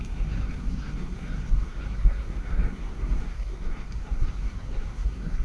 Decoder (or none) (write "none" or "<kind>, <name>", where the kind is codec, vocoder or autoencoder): codec, SNAC